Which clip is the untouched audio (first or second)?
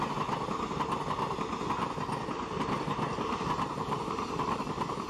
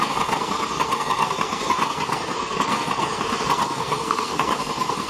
first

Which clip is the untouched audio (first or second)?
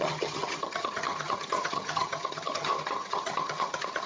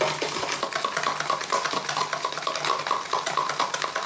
second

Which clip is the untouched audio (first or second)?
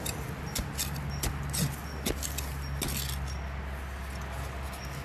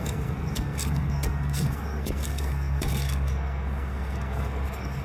first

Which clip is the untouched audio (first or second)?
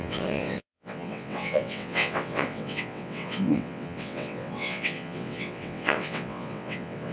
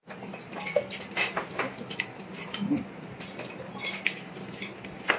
second